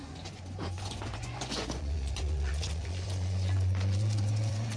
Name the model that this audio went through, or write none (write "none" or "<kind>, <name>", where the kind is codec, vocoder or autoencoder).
vocoder, Vocos